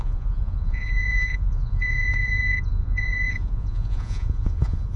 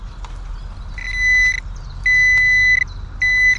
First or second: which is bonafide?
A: second